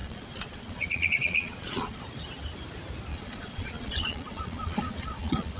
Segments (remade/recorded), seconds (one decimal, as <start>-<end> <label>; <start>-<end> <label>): 0.0-2.0 remade; 2.0-3.1 recorded; 3.1-5.6 remade